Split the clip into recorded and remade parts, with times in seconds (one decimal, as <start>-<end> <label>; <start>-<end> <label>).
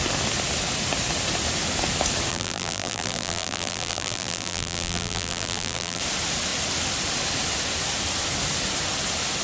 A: 0.0-2.3 recorded; 2.3-6.0 remade; 6.0-9.4 recorded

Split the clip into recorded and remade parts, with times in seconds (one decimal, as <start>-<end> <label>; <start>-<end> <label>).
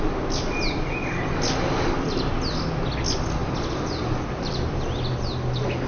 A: 0.0-5.9 recorded